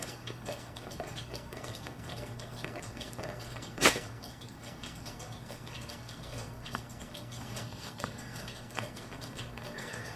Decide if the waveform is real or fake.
fake